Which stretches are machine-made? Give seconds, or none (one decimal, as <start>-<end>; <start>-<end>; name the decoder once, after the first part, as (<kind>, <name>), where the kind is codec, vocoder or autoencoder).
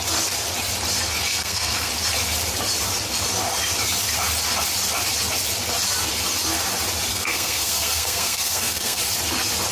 1.3-1.9 (codec, SNAC); 7.1-9.0